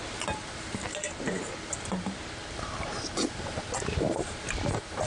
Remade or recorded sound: remade